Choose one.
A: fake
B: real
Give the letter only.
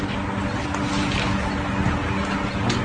B